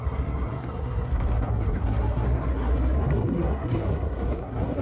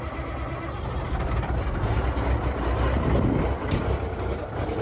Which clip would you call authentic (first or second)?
second